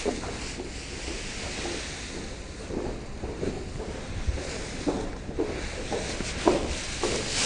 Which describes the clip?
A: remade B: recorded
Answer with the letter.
B